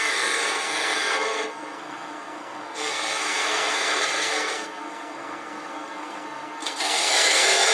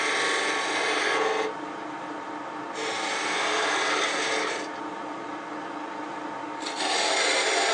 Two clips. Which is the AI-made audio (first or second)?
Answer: first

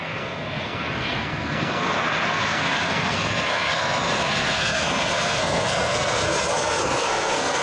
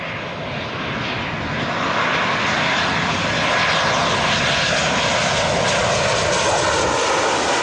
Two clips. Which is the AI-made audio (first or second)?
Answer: first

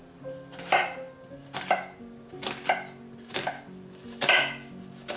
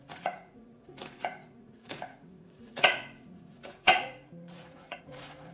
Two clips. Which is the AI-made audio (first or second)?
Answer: second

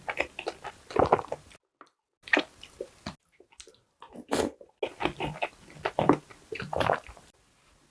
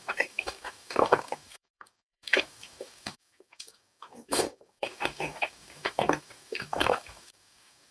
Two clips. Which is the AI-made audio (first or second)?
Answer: second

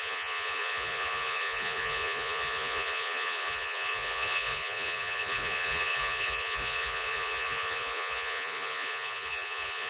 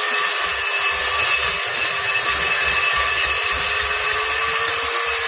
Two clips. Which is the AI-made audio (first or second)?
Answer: first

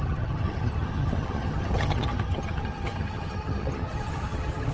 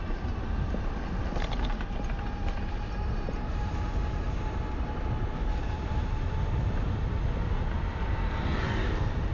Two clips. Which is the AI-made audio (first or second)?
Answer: first